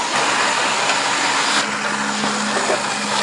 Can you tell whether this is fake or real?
real